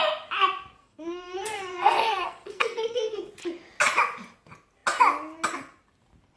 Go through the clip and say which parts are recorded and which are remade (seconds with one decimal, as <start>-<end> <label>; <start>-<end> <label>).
0.0-0.8 recorded; 0.8-3.3 remade; 3.3-6.4 recorded